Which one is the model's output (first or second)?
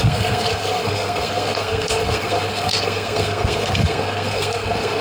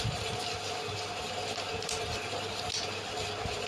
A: first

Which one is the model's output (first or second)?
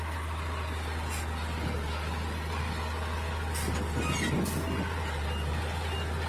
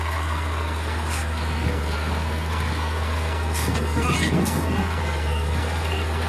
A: second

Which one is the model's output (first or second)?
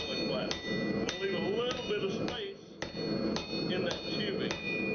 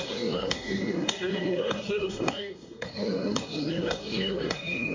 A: second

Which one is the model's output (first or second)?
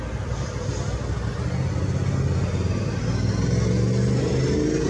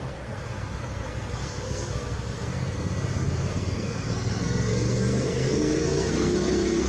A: second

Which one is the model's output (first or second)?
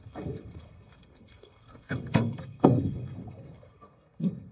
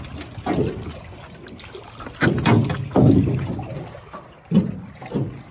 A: first